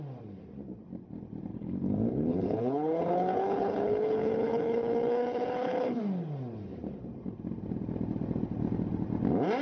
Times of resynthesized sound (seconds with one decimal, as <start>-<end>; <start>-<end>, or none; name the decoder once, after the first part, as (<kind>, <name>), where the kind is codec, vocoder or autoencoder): 1.5-6.0 (codec, HILCodec)